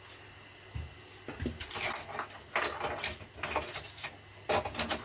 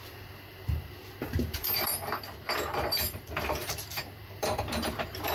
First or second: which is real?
first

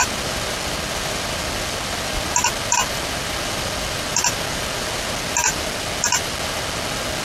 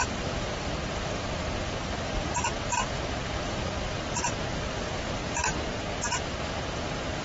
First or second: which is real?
first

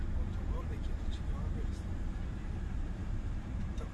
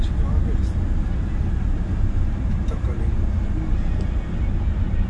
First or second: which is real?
second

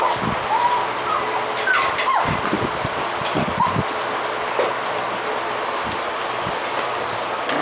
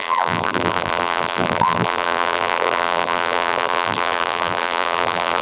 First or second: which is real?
first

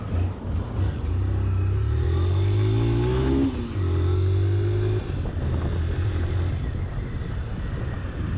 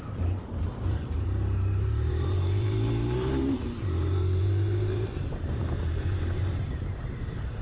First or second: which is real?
first